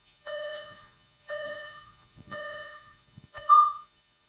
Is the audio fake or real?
fake